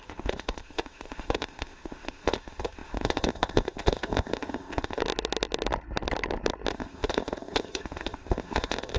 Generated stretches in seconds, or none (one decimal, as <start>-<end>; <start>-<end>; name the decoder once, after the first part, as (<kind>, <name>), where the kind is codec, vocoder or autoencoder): 0.0-5.0 (codec, ZipCodec); 6.7-9.0